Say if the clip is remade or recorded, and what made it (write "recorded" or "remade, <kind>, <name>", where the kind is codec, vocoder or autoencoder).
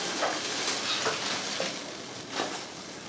recorded